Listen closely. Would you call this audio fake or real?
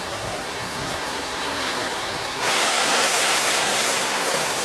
fake